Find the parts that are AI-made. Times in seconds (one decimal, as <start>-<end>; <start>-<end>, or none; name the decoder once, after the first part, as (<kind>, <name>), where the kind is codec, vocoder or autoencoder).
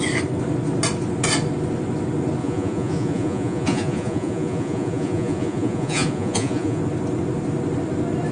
2.4-6.8 (vocoder, Vocos)